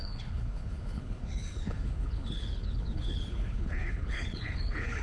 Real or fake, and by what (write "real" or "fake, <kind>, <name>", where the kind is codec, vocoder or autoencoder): fake, codec, HILCodec